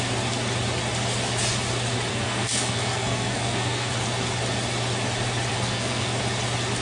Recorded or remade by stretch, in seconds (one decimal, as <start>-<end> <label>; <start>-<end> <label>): 0.0-2.1 recorded; 2.1-3.9 remade; 3.9-5.5 recorded; 5.5-6.2 remade; 6.2-6.8 recorded